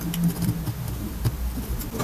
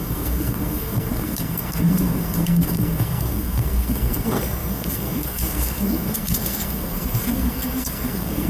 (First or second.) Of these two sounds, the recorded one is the first